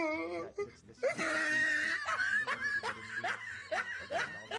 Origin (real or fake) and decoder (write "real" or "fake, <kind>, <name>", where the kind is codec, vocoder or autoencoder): real